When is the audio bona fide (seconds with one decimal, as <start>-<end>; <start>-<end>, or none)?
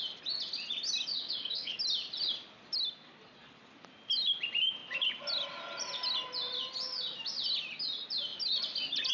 0.0-1.1; 1.8-9.1